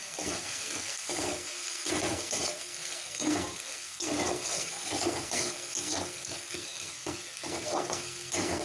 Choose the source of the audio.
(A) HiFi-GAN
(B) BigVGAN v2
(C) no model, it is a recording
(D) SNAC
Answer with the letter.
D